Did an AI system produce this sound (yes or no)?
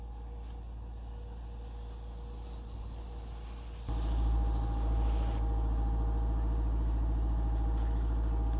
no